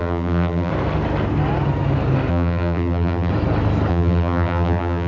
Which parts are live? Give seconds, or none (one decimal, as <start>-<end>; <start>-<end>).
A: 0.7-2.3; 3.3-3.9